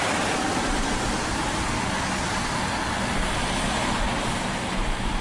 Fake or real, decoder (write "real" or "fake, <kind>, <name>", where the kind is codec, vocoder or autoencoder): real